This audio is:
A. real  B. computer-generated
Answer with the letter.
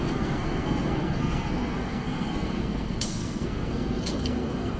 B